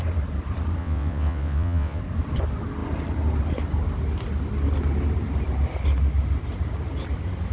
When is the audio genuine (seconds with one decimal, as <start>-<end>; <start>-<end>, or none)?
0.0-0.8; 2.0-7.5